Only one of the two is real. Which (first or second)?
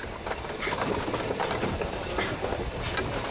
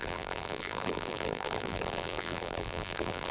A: first